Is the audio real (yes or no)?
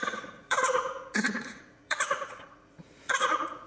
no